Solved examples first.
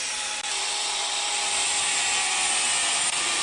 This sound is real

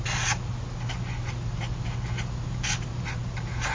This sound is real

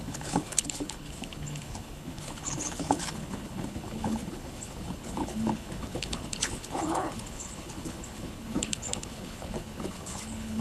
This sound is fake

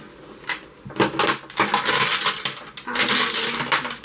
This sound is real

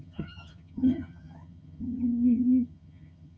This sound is fake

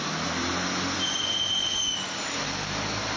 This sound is real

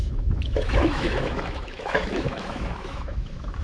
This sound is fake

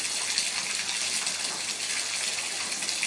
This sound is real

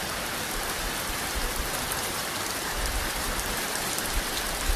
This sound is fake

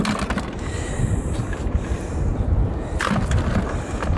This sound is real